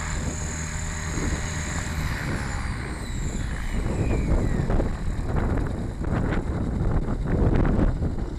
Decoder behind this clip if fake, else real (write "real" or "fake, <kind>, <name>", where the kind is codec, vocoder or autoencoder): fake, vocoder, BigVGAN v2